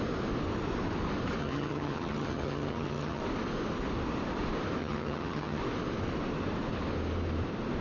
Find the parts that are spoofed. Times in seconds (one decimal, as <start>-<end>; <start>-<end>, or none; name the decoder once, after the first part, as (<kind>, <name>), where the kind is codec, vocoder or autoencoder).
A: 1.4-3.2 (vocoder, HiFi-GAN); 4.8-5.6